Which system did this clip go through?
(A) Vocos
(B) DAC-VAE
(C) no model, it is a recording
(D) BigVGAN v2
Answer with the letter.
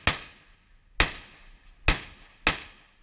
C